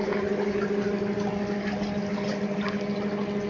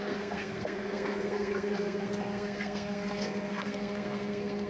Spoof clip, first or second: second